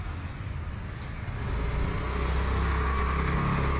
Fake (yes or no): no